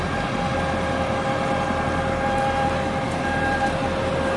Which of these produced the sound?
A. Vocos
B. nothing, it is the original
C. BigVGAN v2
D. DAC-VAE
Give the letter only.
B